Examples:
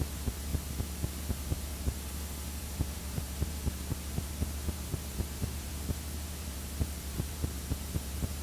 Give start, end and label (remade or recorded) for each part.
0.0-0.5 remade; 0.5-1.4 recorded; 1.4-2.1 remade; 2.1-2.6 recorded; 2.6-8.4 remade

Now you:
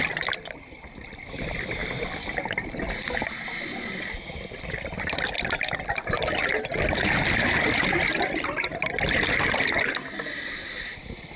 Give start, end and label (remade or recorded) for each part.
0.0-1.8 remade; 1.8-2.5 recorded; 2.5-6.4 remade; 6.4-11.0 recorded; 11.0-11.4 remade

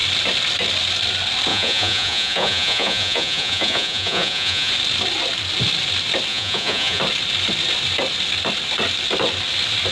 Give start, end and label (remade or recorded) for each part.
0.0-1.5 recorded; 1.5-4.7 remade; 4.7-6.3 recorded; 6.3-7.0 remade; 7.0-9.9 recorded

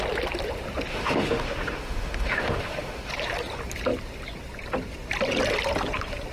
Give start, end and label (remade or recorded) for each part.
0.0-0.9 recorded; 0.9-3.1 remade; 3.1-6.3 recorded

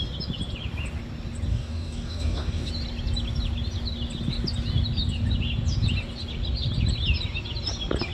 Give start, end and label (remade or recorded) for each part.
0.0-1.5 recorded; 1.5-2.7 remade; 2.7-8.1 recorded

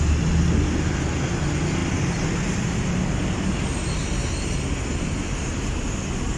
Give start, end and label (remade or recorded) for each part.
0.0-6.4 recorded

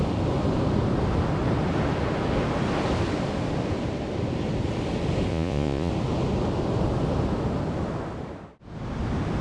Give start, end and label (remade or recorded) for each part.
0.0-5.3 recorded; 5.3-5.9 remade; 5.9-9.4 recorded